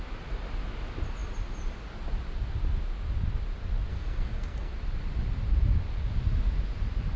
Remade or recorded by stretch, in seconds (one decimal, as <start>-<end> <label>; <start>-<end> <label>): 0.0-3.9 recorded; 3.9-4.7 remade; 4.7-7.2 recorded